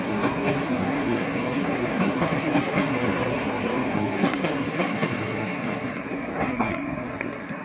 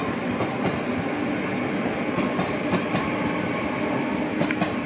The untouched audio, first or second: second